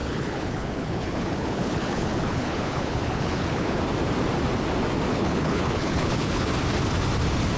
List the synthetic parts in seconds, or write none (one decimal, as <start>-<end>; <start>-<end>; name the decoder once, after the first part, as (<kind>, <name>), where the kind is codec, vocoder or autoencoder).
0.0-3.8 (codec, HILCodec); 5.1-6.5